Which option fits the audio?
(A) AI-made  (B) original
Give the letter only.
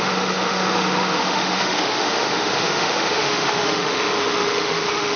A